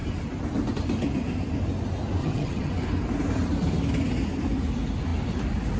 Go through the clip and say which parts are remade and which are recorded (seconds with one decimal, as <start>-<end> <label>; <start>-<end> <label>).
0.0-2.2 recorded; 2.2-2.7 remade; 2.7-5.8 recorded